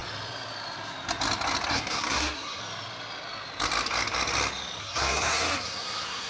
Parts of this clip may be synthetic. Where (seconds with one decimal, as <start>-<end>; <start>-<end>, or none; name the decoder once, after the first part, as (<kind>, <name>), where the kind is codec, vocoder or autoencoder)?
1.7-2.6 (codec, SNAC); 4.8-6.3